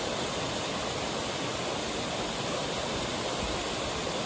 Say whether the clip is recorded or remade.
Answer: recorded